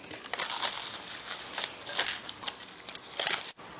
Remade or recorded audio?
recorded